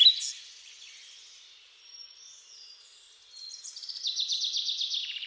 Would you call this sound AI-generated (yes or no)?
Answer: no